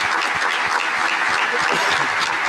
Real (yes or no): yes